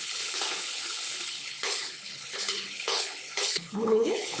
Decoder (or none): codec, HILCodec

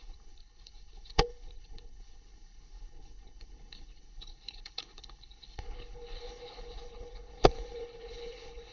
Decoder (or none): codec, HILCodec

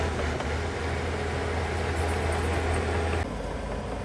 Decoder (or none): none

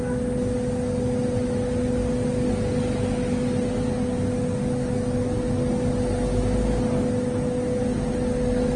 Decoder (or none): none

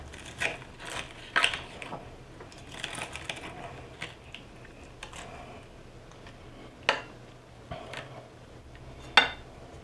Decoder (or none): none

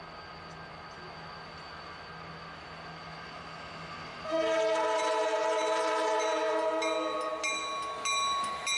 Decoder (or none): none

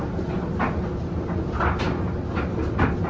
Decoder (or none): none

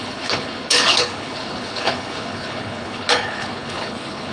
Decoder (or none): codec, HILCodec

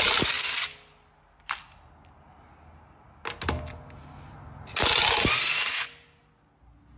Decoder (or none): none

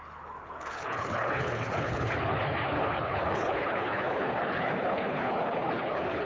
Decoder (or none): codec, HILCodec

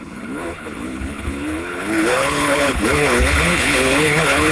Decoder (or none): codec, HILCodec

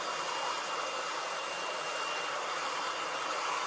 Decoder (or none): none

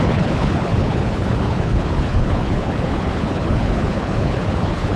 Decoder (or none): codec, HILCodec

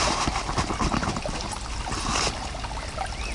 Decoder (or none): none